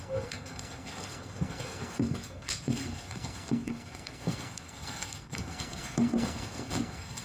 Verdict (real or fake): fake